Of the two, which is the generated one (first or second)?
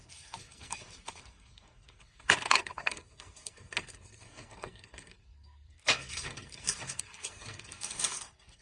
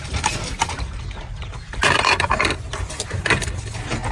first